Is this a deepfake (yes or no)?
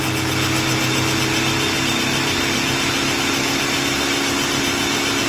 no